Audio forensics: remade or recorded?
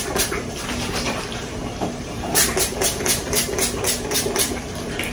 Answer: remade